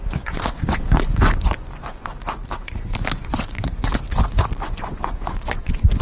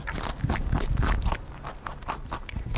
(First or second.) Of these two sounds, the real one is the second